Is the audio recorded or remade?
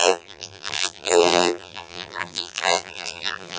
remade